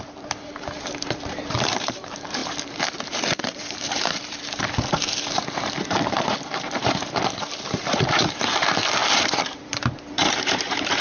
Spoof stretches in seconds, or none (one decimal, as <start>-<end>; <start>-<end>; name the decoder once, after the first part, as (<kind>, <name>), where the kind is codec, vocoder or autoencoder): 0.0-11.0 (vocoder, BigVGAN v2)